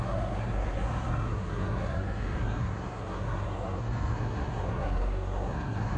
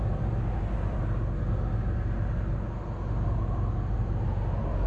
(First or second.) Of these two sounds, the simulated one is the first